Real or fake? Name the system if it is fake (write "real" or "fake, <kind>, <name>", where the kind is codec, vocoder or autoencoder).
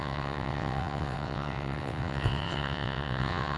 fake, vocoder, WaveNeXt